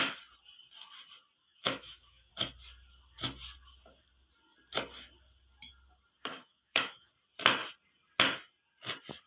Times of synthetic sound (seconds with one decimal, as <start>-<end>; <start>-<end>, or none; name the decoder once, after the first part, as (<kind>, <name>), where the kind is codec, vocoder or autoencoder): 1.4-2.3 (autoencoder, DAC-VAE); 6.3-7.1